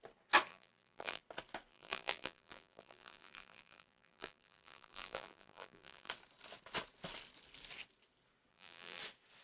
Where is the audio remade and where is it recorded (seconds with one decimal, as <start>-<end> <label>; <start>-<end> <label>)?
0.0-0.5 recorded; 0.5-1.2 remade; 1.2-1.7 recorded; 1.7-6.1 remade; 6.1-8.5 recorded; 8.5-9.0 remade; 9.0-9.4 recorded